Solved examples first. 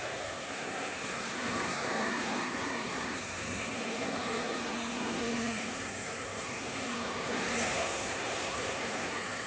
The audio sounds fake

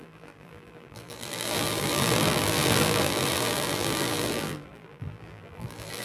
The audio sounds fake